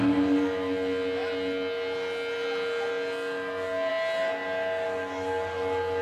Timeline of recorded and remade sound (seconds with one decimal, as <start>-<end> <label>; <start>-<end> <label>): 0.0-6.0 recorded